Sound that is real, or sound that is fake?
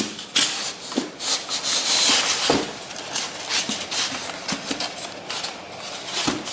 real